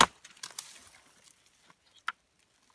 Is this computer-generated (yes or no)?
no